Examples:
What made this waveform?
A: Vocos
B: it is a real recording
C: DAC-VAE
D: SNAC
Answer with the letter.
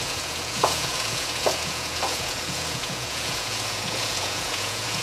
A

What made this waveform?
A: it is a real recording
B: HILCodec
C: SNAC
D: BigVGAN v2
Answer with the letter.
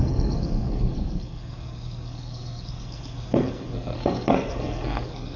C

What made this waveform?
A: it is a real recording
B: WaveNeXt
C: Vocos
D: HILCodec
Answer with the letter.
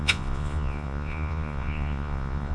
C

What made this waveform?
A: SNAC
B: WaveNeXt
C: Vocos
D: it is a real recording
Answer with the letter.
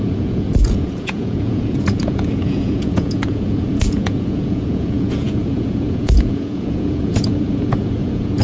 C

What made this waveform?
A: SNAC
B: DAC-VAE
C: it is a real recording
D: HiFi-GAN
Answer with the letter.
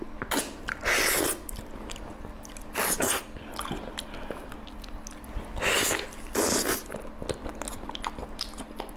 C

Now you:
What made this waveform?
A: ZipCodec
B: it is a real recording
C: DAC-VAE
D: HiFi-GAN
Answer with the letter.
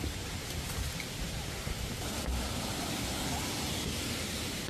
B